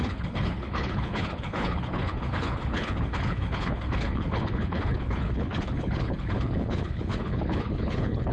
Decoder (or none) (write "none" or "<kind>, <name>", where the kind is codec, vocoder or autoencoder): codec, HILCodec